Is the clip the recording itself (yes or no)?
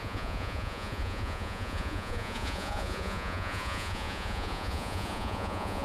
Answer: no